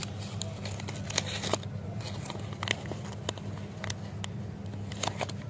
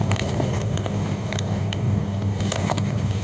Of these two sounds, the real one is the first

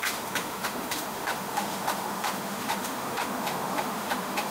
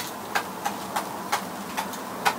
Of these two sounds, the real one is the second